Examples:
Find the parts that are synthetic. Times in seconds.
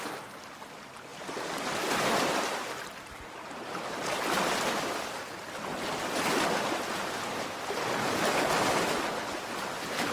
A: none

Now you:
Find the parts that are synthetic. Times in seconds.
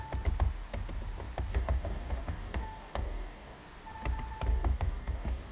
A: 1.5-3.6 (codec, DAC); 4.5-5.5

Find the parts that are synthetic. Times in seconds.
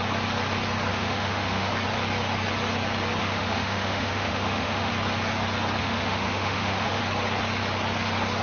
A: 0.9-1.7 (autoencoder, DAC-VAE); 3.2-4.9; 5.8-7.0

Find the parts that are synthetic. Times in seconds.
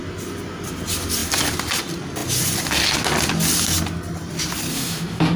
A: 4.7-5.4 (autoencoder, DAC-VAE)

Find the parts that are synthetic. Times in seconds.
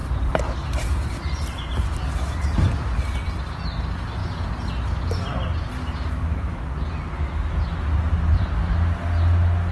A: none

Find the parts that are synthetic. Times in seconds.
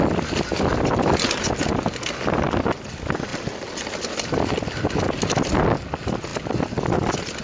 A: none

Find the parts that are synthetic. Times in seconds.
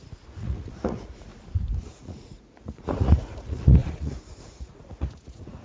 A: 0.0-1.3 (vocoder, Vocos); 1.8-5.6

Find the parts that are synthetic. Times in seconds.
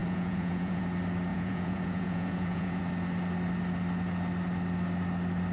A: 0.0-0.8 (vocoder, Vocos); 1.3-2.8